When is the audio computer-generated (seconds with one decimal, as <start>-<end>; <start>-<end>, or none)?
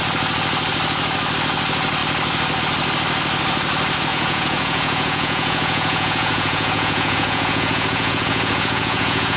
4.1-9.4